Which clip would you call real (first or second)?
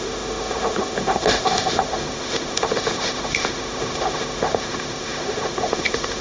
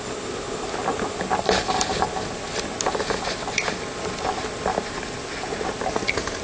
second